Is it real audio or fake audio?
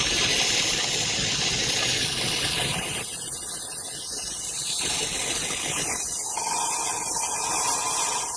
real